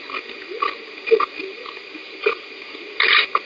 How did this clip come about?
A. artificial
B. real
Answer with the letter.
B